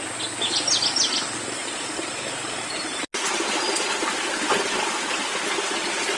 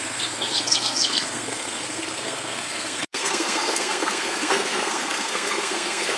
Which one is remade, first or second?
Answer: second